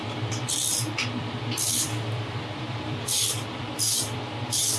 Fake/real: fake